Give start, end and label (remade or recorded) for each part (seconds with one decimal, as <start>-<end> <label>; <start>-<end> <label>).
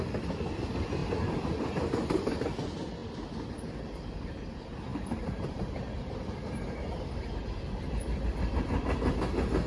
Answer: 0.0-4.9 recorded; 4.9-7.8 remade; 7.8-9.7 recorded